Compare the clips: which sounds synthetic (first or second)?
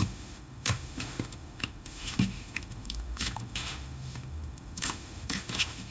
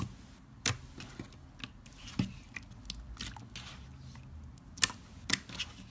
first